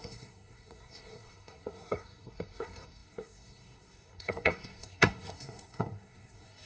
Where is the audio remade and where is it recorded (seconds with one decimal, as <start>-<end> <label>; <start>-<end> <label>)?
0.0-6.7 remade